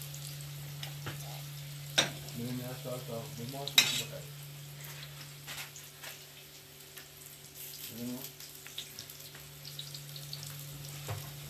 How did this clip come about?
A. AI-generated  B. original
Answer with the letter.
B